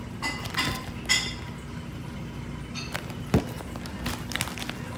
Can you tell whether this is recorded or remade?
recorded